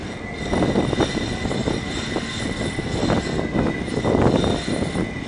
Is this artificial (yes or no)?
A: no